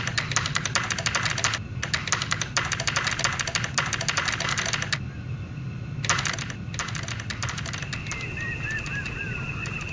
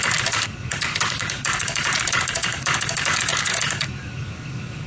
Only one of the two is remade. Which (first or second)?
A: second